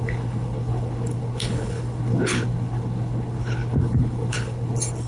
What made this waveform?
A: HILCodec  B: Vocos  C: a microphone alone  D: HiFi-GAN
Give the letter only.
A